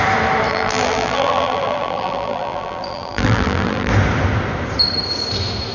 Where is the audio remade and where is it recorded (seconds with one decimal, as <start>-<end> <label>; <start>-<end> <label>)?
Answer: 0.0-0.5 recorded; 0.5-3.9 remade; 3.9-5.7 recorded